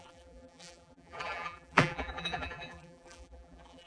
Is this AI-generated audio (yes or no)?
yes